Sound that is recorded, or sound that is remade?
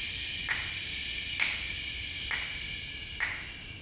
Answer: recorded